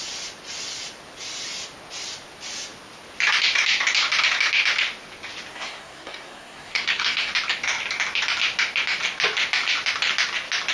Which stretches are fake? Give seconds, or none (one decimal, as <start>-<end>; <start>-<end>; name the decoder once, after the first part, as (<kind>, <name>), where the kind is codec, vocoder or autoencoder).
5.5-7.3 (codec, SNAC)